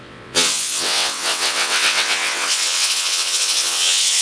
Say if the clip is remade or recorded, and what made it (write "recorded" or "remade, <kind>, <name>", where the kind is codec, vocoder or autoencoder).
remade, vocoder, WaveNeXt